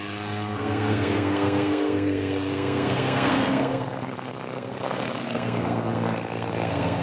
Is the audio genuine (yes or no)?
no